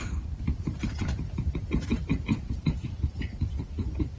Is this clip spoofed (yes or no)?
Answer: yes